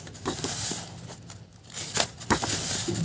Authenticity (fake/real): real